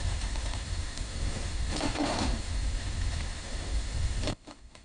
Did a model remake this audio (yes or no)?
yes